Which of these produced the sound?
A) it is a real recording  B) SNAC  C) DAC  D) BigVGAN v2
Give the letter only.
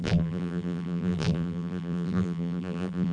D